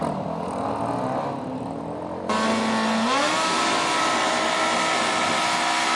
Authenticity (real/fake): real